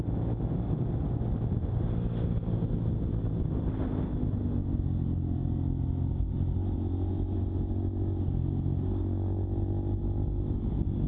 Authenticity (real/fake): real